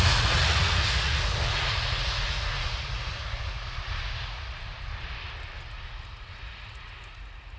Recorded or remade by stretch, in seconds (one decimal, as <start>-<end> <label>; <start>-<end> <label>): 0.0-4.9 remade; 4.9-5.6 recorded; 5.6-7.6 remade